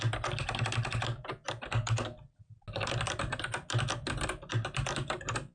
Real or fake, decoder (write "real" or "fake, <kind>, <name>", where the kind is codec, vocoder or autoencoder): real